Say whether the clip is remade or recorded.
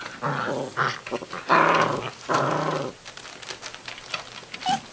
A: recorded